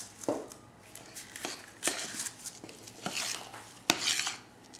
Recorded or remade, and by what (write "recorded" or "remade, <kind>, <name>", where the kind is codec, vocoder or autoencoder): recorded